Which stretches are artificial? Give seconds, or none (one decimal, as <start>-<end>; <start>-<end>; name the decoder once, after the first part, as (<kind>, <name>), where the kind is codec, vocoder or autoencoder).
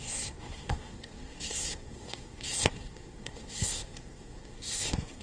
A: 0.0-5.2 (codec, SNAC)